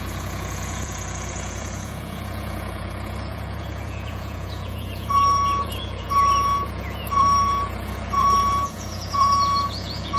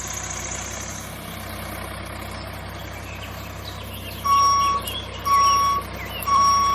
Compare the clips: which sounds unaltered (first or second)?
second